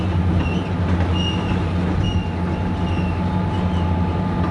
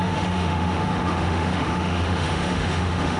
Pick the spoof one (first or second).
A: second